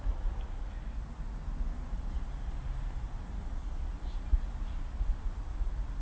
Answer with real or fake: real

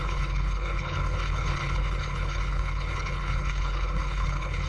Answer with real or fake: fake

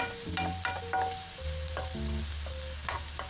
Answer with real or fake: real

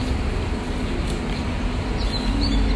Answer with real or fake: real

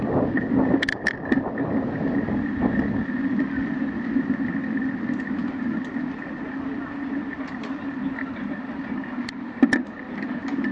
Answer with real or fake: real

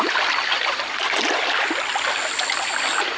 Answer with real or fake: real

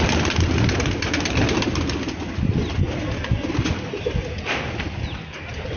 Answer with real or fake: real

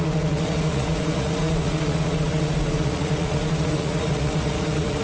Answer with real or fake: fake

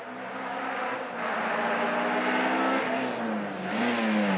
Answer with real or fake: real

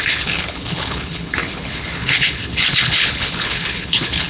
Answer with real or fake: fake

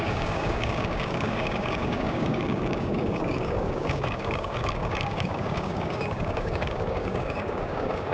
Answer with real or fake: fake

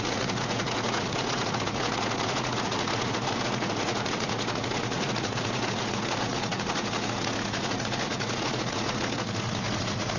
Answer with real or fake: fake